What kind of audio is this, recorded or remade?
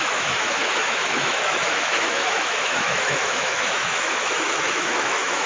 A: remade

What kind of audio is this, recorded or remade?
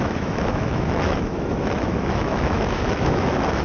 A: remade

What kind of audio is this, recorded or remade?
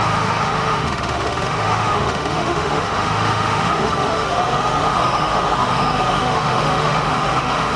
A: remade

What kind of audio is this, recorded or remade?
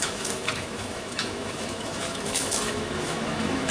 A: remade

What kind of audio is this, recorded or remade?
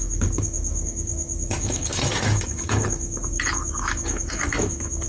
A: remade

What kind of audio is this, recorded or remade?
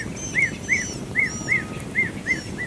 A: recorded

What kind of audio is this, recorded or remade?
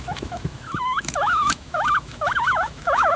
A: remade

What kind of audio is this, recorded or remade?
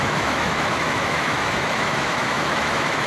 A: remade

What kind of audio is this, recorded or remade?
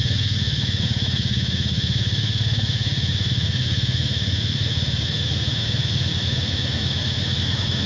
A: remade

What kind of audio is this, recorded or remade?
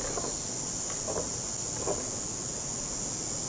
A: recorded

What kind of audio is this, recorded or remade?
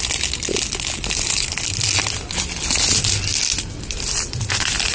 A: recorded